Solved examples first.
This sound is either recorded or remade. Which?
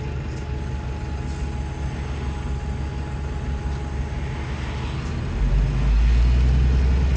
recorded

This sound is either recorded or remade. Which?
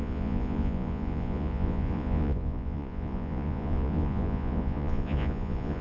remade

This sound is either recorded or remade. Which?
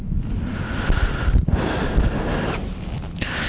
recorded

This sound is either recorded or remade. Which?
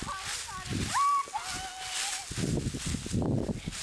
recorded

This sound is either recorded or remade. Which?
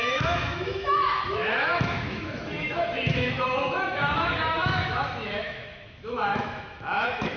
remade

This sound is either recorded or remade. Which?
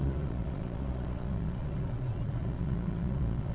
remade